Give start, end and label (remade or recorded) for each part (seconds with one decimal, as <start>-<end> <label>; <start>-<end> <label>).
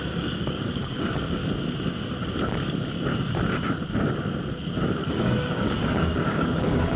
0.0-1.4 remade; 1.4-4.9 recorded; 4.9-7.0 remade